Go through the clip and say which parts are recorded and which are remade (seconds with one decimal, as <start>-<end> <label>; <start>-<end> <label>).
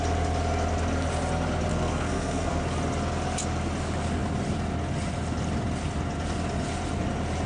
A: 0.0-1.7 recorded; 1.7-2.6 remade; 2.6-7.5 recorded